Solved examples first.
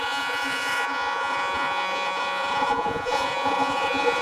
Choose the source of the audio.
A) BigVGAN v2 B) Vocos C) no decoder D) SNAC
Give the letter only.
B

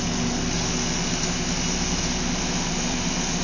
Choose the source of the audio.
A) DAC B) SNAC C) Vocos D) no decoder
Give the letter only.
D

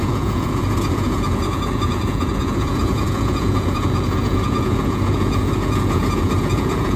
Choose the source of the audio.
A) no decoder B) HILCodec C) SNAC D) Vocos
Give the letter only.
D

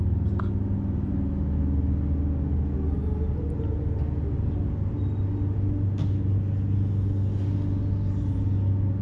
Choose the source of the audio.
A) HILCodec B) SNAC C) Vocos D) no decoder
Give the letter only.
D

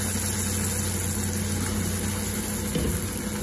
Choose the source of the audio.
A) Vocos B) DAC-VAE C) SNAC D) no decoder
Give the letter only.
D